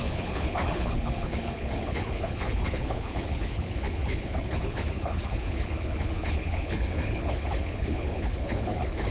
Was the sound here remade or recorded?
remade